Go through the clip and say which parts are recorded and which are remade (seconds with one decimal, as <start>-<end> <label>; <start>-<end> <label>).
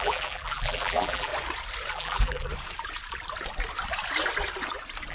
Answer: 0.0-1.3 remade; 1.3-1.9 recorded; 1.9-2.5 remade; 2.5-5.1 recorded